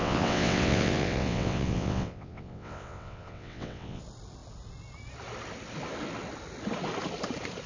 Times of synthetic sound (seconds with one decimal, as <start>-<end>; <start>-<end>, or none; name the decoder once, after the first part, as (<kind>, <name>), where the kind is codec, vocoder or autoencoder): 0.0-4.0 (vocoder, WaveNeXt)